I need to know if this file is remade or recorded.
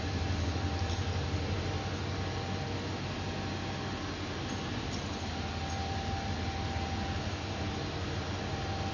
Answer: recorded